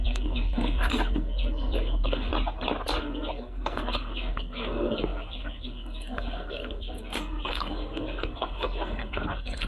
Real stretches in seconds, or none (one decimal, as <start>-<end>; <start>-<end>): 2.3-3.0